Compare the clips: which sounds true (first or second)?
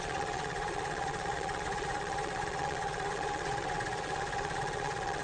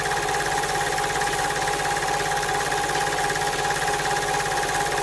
second